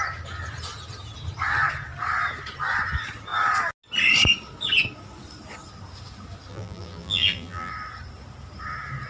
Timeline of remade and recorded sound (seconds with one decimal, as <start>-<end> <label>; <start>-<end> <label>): 0.0-6.5 recorded; 6.5-7.7 remade; 7.7-9.1 recorded